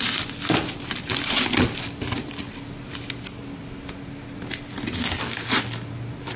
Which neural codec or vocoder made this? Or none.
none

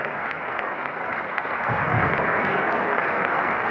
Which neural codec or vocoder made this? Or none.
codec, SNAC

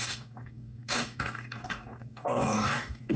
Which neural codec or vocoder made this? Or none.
codec, DAC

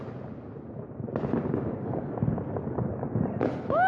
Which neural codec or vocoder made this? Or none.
none